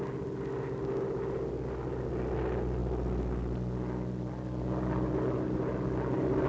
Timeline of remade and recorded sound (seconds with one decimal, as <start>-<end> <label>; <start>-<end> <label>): 0.0-6.5 recorded